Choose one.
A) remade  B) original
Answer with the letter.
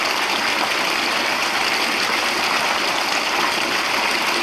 B